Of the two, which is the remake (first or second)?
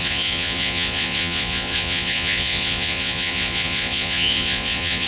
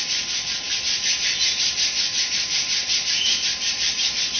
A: first